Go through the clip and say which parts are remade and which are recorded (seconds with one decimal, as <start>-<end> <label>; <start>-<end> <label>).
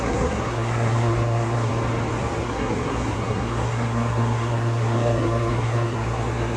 0.0-1.7 remade; 1.7-2.4 recorded; 2.4-6.6 remade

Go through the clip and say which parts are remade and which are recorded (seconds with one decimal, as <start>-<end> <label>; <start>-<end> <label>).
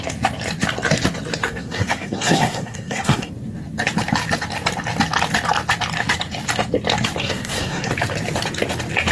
0.0-1.4 recorded; 1.4-3.3 remade; 3.3-7.2 recorded; 7.2-7.9 remade; 7.9-9.1 recorded